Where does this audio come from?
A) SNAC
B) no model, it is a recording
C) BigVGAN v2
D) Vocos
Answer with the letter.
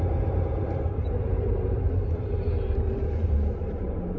C